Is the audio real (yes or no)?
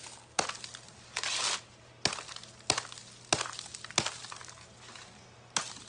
yes